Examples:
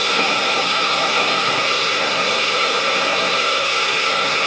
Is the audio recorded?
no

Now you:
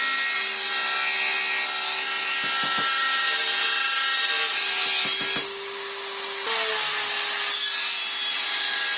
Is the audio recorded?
yes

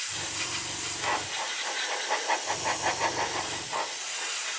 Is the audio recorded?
yes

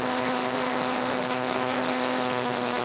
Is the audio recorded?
no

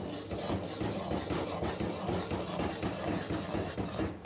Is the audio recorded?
yes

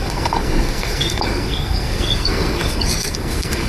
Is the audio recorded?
no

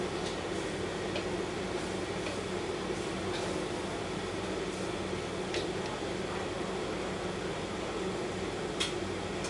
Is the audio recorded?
yes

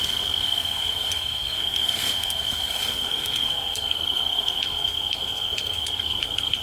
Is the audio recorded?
no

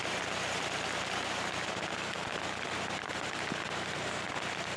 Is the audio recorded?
yes